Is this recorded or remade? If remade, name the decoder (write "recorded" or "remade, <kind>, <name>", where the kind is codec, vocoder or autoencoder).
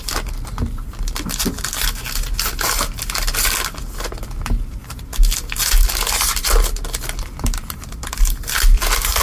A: recorded